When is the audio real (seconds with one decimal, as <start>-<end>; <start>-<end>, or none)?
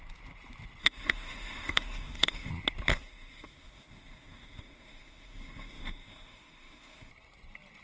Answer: 0.0-0.8; 2.5-2.9; 7.1-7.8